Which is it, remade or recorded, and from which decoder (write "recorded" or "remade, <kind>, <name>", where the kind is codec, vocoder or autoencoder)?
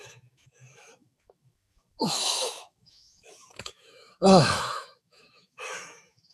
remade, autoencoder, DAC-VAE